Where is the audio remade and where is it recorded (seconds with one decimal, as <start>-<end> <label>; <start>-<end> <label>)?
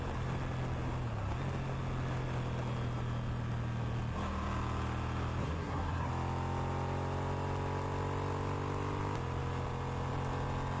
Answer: 0.0-5.4 recorded; 5.4-6.1 remade; 6.1-10.8 recorded